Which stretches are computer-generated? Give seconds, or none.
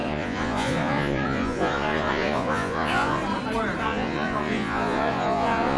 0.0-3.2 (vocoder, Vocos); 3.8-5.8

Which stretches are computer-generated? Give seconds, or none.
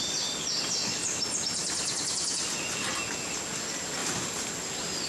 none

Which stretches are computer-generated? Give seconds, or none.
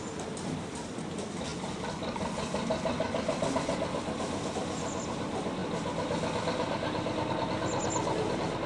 none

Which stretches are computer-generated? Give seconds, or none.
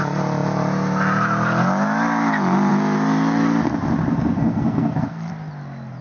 4.1-5.3 (codec, SNAC)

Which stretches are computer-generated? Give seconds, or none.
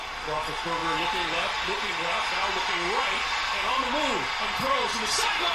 none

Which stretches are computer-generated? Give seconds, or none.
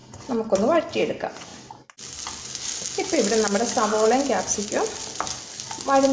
none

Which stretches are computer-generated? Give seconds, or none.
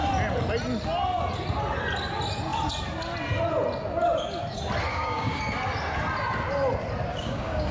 4.9-5.4 (codec, DAC); 7.1-7.7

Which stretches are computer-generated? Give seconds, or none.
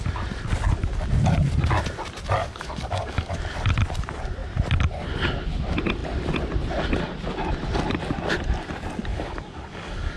2.4-3.4 (codec, DAC); 9.1-10.2